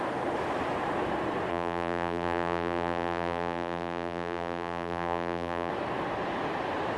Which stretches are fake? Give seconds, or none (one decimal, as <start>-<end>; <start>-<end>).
1.5-5.7